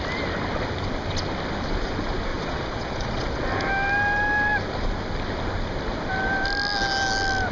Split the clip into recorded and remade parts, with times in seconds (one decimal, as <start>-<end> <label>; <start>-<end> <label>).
0.0-2.3 recorded; 2.3-3.5 remade; 3.5-7.5 recorded